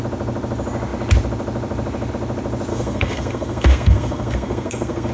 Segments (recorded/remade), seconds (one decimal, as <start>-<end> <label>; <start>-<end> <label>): 0.0-2.7 recorded; 2.7-5.1 remade